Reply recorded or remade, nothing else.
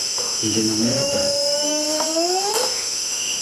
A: remade